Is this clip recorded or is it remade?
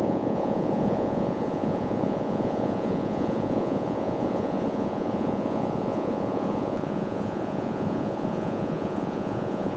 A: remade